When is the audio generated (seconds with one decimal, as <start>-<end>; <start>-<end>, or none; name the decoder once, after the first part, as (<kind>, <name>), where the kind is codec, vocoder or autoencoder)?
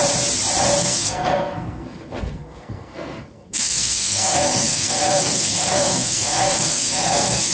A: 0.8-7.5 (codec, SNAC)